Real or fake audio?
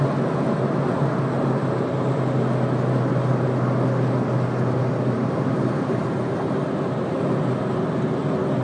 real